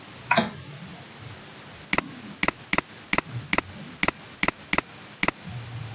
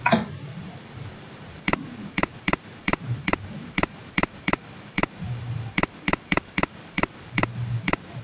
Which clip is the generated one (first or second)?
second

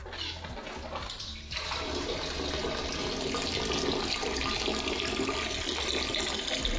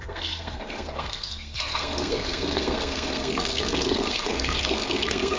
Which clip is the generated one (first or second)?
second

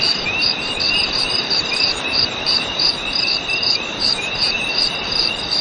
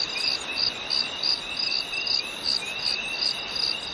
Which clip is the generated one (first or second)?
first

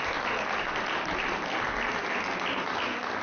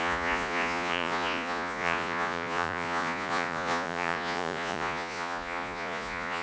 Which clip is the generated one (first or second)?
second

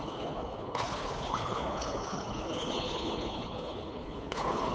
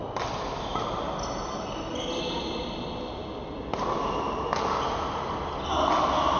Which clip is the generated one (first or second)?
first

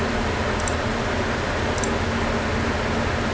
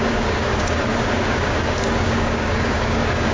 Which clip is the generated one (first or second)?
second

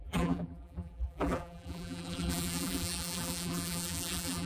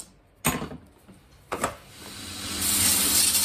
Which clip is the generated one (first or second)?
first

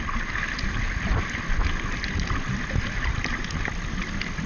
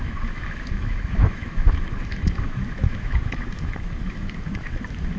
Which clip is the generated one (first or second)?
second